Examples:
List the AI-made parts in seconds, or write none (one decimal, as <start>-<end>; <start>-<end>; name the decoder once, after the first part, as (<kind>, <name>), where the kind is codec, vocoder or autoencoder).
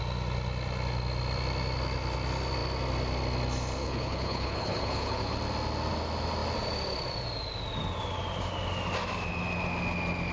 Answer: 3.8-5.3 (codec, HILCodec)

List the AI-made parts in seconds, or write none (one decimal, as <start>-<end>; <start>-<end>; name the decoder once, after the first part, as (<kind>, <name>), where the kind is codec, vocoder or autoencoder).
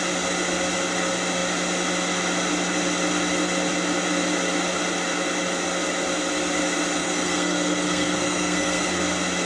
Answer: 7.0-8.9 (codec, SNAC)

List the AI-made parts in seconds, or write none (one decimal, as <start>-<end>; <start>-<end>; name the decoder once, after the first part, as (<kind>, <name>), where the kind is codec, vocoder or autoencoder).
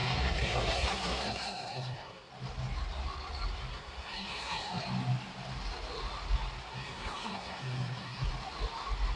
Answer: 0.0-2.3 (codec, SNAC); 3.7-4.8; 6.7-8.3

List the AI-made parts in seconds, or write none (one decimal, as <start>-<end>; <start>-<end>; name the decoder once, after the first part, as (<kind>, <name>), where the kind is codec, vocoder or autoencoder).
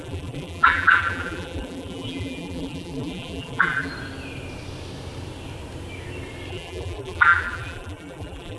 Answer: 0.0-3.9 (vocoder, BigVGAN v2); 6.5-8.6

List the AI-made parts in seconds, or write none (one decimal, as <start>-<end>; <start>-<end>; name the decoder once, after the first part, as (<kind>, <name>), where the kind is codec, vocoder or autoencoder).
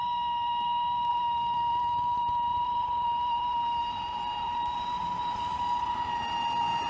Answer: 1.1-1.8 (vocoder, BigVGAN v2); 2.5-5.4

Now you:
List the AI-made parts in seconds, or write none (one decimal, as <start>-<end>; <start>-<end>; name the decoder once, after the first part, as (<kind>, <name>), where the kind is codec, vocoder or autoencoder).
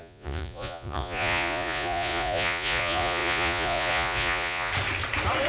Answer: 0.0-4.7 (vocoder, Vocos)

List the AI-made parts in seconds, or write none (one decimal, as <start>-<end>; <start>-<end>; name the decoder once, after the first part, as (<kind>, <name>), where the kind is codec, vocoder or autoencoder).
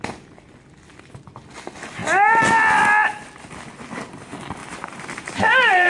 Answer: 4.6-5.9 (vocoder, BigVGAN v2)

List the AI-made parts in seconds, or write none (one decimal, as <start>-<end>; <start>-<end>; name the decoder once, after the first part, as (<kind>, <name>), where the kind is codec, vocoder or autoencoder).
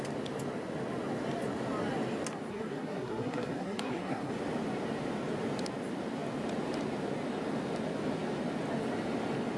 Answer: 2.5-4.3 (codec, SNAC)